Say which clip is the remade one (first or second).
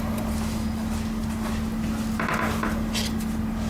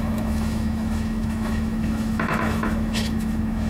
second